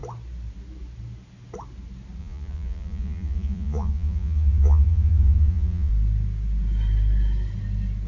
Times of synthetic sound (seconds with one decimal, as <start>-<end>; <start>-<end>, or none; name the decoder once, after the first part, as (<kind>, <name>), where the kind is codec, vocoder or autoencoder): 2.2-5.9 (vocoder, Vocos)